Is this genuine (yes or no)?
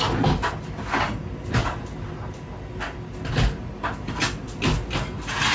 yes